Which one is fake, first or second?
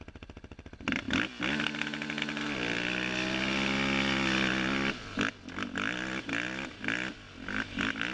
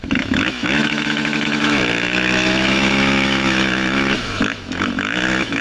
second